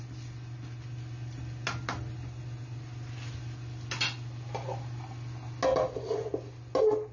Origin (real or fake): real